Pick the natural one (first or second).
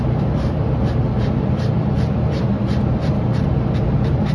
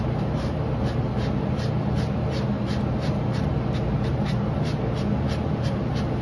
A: second